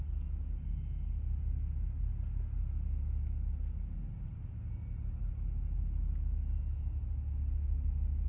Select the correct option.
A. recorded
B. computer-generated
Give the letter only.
A